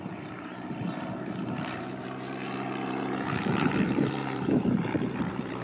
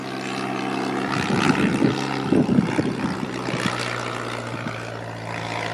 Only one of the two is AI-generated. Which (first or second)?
first